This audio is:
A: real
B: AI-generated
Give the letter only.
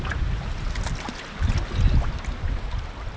A